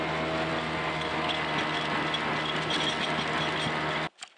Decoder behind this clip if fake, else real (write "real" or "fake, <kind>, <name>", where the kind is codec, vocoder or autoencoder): real